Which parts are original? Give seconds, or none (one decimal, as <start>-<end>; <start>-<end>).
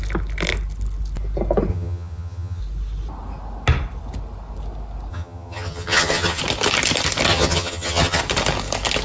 0.0-1.7; 2.6-5.1; 6.4-7.3; 8.2-9.0